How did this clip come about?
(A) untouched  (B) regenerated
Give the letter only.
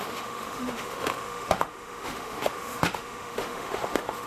B